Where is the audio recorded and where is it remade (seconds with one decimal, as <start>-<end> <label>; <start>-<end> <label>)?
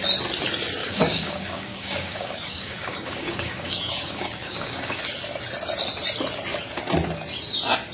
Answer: 0.0-0.8 recorded; 0.8-5.0 remade; 5.0-7.9 recorded